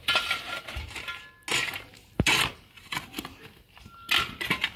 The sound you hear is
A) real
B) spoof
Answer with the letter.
A